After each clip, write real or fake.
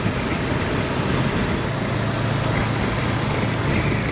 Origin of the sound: real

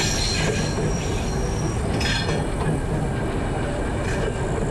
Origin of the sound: real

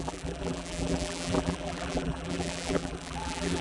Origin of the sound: fake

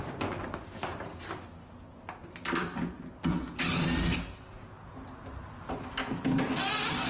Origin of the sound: real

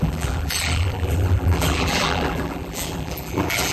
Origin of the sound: fake